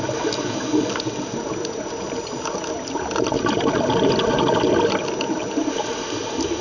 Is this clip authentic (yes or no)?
yes